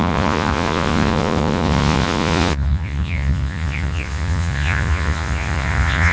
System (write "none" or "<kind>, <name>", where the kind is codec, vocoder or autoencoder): vocoder, Vocos